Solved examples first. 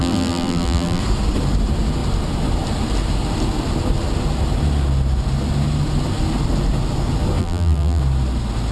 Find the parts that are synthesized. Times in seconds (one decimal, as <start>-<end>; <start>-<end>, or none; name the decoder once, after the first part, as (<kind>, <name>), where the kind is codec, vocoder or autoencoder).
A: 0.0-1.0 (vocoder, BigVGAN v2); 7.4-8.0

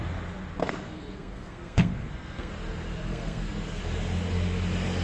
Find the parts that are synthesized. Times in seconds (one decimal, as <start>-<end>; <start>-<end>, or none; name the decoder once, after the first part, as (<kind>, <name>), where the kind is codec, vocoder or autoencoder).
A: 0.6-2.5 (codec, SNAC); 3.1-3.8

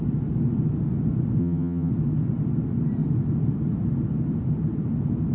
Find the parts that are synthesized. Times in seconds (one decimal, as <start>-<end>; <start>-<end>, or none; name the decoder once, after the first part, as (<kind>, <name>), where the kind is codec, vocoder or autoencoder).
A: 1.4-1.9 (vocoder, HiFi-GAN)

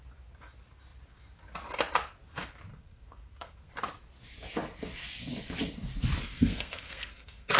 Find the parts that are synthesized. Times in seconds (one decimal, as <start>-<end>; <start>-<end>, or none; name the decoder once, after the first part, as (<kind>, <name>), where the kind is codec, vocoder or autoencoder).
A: 2.7-3.7 (codec, SNAC); 6.2-7.6

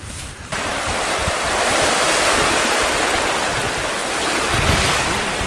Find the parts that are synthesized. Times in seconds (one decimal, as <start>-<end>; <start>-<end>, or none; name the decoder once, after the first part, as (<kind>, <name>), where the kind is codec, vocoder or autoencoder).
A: 0.0-4.0 (vocoder, BigVGAN v2); 4.9-5.5

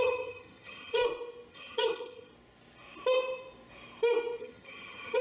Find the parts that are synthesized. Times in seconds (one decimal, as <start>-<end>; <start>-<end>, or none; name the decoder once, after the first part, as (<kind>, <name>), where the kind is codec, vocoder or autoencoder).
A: 0.0-1.0 (vocoder, HiFi-GAN); 1.5-2.3; 4.4-5.2

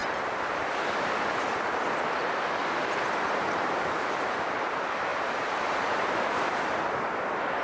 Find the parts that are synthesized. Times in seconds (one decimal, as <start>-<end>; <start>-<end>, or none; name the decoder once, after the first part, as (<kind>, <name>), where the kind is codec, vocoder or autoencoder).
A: 1.4-7.6 (vocoder, BigVGAN v2)